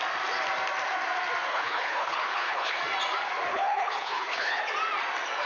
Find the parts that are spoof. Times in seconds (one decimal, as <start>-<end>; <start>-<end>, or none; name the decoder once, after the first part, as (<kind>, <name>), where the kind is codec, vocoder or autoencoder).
1.5-2.8 (codec, HILCodec); 3.5-4.6

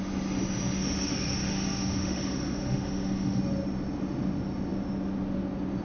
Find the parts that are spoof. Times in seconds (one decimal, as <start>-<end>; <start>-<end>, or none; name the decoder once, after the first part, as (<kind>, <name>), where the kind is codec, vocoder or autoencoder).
0.8-3.4 (autoencoder, DAC-VAE)

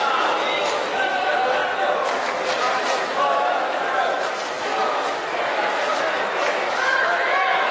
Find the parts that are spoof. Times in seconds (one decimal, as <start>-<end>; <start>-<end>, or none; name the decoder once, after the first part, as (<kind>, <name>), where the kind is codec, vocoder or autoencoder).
0.0-1.6 (autoencoder, DAC-VAE); 2.6-7.7

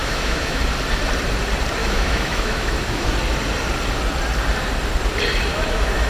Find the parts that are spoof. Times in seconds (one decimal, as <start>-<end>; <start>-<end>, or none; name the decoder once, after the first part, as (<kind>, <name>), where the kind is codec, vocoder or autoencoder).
0.0-0.6 (autoencoder, DAC-VAE); 1.8-3.1; 5.5-6.1

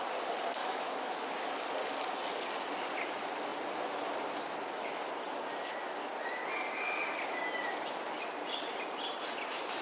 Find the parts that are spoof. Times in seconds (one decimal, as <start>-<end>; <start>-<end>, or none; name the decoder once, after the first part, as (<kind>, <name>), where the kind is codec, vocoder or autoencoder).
0.6-1.4 (autoencoder, DAC-VAE)